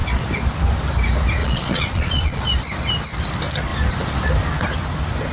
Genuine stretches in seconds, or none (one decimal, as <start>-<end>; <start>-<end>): 0.0-1.4; 2.4-5.3